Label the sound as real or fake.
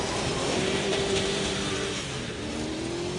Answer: real